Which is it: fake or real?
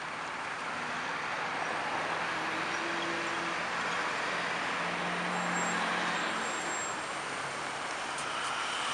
real